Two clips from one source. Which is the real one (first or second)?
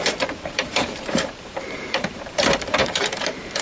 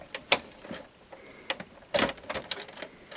second